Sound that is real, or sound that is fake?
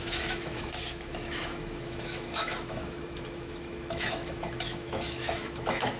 fake